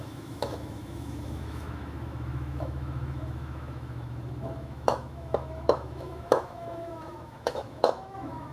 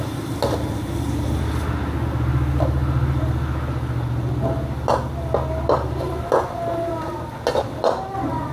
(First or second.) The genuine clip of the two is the second